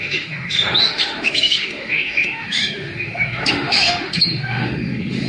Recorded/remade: remade